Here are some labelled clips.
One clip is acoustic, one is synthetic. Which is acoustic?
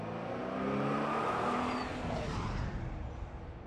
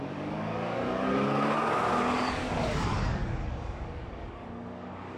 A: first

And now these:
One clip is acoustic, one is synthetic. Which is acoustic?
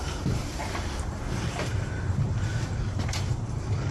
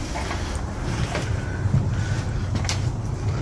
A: second